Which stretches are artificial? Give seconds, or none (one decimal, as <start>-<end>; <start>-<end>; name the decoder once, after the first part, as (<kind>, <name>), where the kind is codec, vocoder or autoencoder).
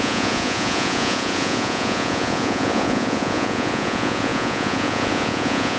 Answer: 0.0-5.8 (vocoder, Vocos)